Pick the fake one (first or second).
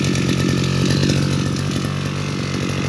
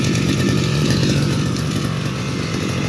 second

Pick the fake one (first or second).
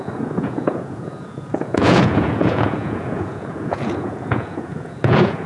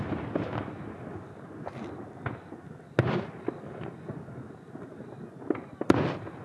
first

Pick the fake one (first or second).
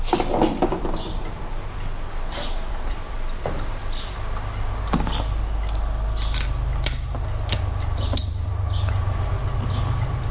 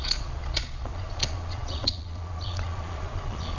second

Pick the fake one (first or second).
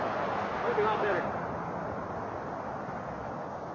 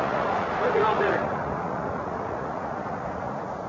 second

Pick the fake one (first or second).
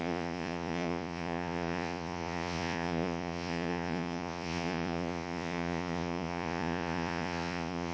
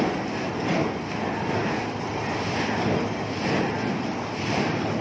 first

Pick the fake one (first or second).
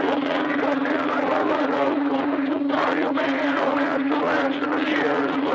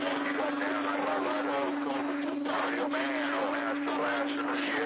first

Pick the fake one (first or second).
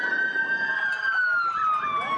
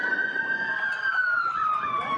second